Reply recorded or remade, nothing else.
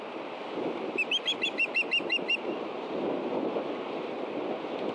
recorded